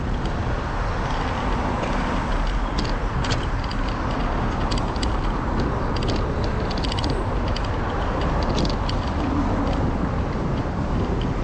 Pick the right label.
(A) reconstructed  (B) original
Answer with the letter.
B